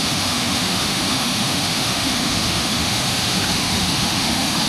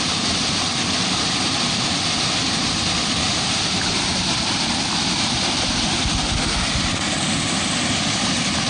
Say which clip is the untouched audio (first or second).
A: second